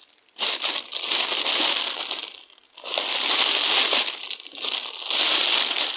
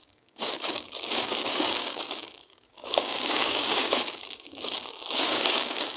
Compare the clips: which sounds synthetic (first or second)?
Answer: second